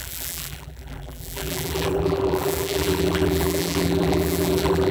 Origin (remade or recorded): remade